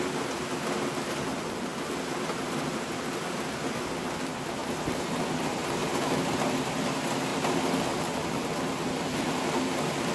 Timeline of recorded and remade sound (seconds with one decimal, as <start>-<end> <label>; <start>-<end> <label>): 0.0-10.1 recorded